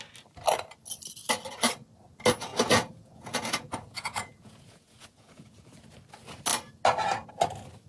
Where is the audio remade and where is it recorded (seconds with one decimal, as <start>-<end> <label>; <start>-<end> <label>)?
0.0-2.5 recorded; 2.5-5.7 remade; 5.7-7.9 recorded